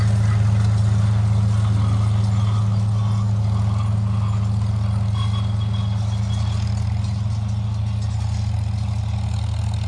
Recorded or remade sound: recorded